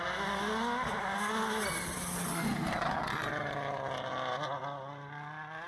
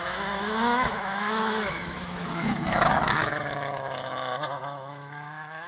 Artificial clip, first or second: second